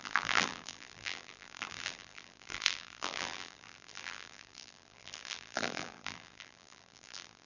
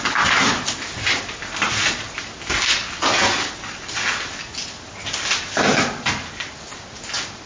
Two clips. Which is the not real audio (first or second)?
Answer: first